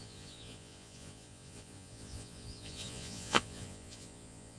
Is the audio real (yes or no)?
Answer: no